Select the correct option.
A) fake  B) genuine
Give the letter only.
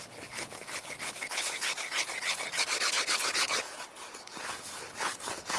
A